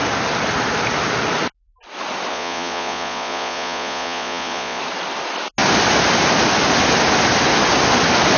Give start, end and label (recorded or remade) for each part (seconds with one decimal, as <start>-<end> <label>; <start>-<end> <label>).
0.0-2.3 recorded; 2.3-4.8 remade; 4.8-8.4 recorded